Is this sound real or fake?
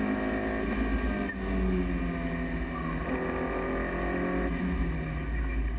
real